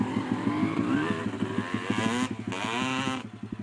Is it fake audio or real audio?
real